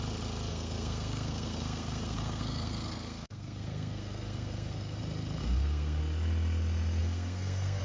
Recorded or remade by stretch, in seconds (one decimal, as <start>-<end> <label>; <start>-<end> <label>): 0.0-0.5 recorded; 0.5-5.0 remade; 5.0-5.4 recorded; 5.4-6.0 remade; 6.0-7.0 recorded; 7.0-7.8 remade